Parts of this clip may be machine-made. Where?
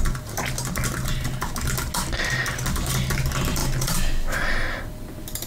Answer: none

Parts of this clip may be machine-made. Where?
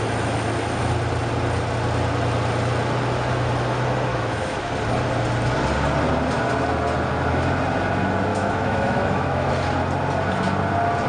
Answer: 4.1-4.7 (autoencoder, DAC-VAE); 8.3-9.5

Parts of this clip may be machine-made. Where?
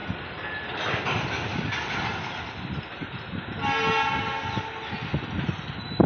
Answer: none